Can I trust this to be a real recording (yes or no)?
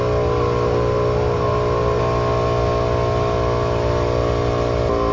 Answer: yes